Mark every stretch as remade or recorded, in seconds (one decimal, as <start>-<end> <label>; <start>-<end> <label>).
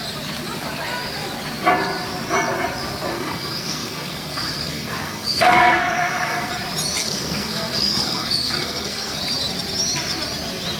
0.0-3.1 recorded; 3.1-6.5 remade; 6.5-7.0 recorded; 7.0-9.2 remade; 9.2-10.8 recorded